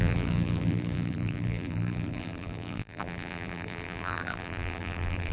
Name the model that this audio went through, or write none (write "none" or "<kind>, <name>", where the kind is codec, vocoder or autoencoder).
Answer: vocoder, BigVGAN v2